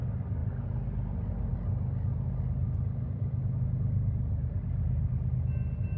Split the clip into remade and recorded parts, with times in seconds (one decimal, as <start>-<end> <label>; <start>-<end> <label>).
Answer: 0.0-6.0 recorded

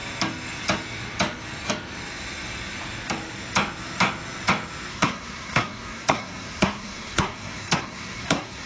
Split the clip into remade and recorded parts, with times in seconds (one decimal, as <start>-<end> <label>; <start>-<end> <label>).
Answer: 0.0-4.9 recorded; 4.9-8.7 remade

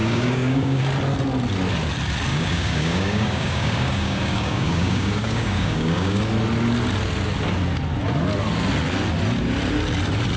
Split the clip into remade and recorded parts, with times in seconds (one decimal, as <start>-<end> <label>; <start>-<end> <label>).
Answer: 0.0-0.8 remade; 0.8-2.3 recorded; 2.3-6.2 remade; 6.2-10.4 recorded

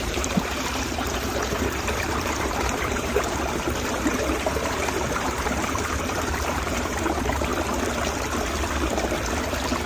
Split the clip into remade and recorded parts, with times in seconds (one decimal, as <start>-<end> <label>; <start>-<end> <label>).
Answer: 0.0-7.5 remade; 7.5-9.9 recorded